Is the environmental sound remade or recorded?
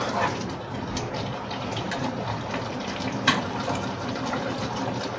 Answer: remade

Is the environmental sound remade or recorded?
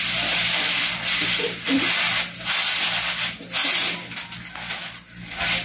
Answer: recorded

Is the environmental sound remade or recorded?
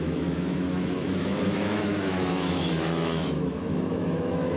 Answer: remade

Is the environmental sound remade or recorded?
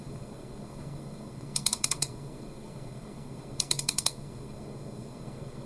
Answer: remade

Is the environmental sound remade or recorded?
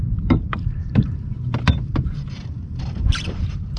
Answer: remade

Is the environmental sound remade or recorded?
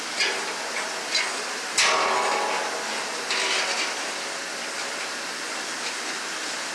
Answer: recorded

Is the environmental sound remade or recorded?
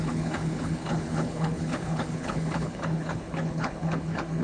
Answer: remade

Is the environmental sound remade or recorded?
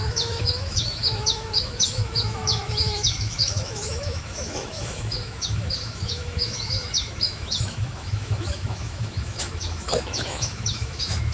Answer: remade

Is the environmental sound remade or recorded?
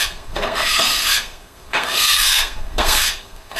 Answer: remade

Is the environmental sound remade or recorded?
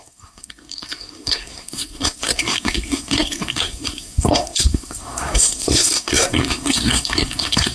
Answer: remade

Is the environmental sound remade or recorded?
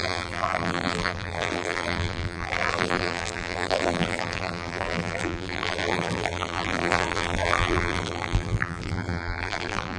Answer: remade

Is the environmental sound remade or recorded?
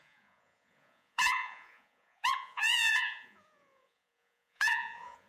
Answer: remade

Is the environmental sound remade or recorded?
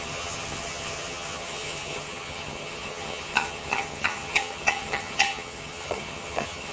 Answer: remade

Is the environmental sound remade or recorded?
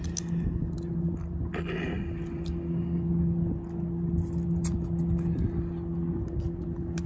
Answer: recorded